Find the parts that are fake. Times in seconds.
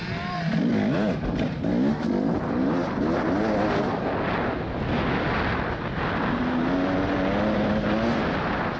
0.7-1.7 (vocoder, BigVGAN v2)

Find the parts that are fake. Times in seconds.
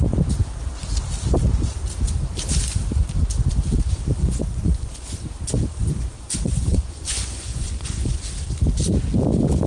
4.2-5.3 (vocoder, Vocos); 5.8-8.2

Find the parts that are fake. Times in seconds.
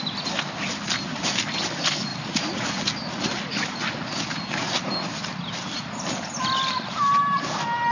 none